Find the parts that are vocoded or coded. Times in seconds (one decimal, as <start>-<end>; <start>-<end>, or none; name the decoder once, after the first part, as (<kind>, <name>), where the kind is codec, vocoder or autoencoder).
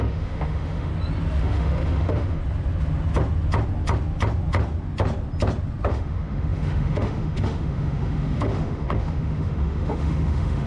0.0-0.9 (autoencoder, DAC-VAE); 1.4-2.4; 5.9-10.7